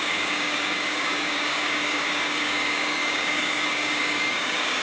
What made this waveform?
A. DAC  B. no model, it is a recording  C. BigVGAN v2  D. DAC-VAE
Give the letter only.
A